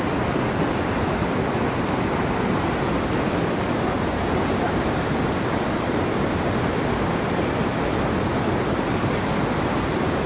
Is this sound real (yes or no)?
yes